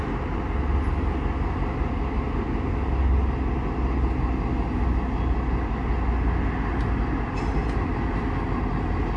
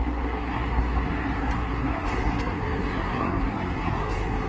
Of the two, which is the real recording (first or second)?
first